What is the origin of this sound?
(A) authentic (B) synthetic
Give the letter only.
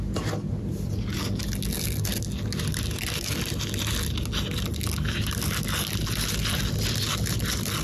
A